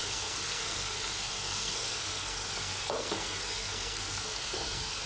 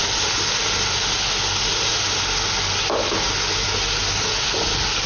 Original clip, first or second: second